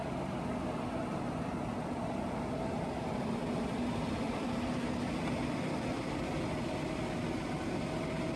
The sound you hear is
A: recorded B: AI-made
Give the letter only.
A